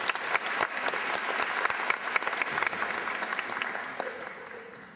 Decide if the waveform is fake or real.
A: real